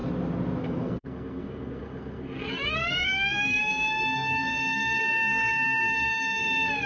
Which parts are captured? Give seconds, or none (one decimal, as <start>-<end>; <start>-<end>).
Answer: 0.0-0.6